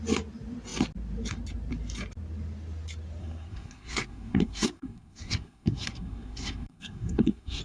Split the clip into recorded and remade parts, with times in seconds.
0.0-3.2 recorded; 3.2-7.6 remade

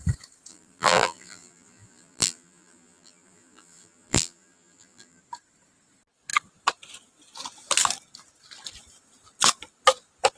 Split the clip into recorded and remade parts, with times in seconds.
0.0-0.5 recorded; 0.5-5.2 remade; 5.2-10.4 recorded

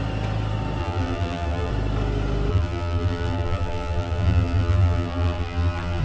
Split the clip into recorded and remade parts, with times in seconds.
0.0-0.8 recorded; 0.8-1.7 remade; 1.7-2.5 recorded; 2.5-6.0 remade